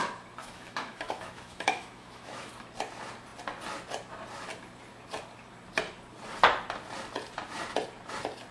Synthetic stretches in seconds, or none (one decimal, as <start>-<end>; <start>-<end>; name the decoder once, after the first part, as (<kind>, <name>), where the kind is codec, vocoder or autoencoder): 0.4-2.5 (autoencoder, DAC-VAE)